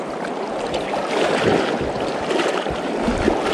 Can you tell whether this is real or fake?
real